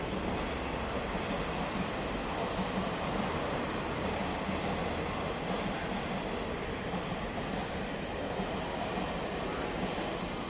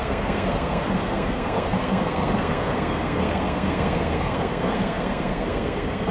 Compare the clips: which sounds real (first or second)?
first